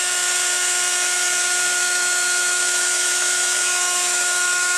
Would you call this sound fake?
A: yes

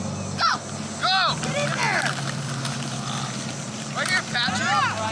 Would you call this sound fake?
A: no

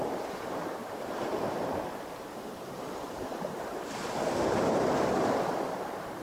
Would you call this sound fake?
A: yes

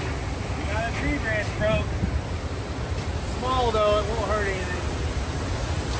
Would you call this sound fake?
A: no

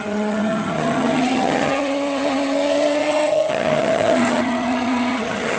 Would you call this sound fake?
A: yes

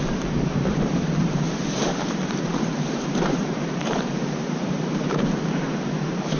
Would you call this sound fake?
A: yes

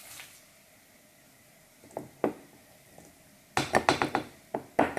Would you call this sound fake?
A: no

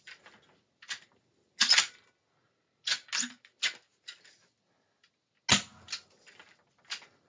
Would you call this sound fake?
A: no